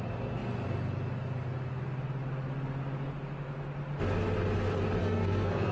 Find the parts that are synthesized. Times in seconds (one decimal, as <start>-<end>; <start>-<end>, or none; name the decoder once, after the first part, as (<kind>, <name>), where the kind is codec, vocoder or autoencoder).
5.0-5.7 (codec, SNAC)